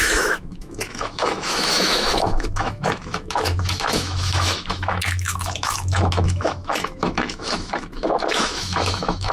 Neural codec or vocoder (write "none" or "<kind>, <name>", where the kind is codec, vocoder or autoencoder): autoencoder, DAC-VAE